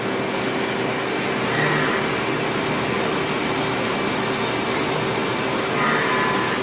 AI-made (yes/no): no